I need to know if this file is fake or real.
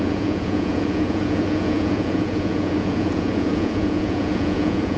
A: fake